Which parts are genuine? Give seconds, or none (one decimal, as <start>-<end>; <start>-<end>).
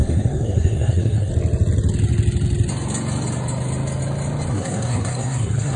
1.3-4.5